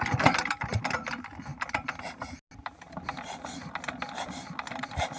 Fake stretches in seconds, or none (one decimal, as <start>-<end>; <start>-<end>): none